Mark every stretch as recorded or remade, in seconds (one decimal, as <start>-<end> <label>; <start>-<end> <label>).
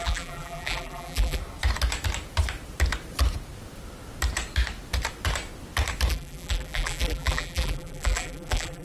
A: 0.0-1.4 remade; 1.4-6.1 recorded; 6.1-8.8 remade